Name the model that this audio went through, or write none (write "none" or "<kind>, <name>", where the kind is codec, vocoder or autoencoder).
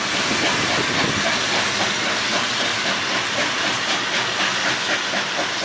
none